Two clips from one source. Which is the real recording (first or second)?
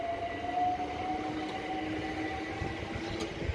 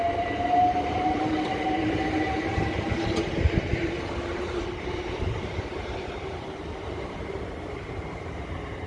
first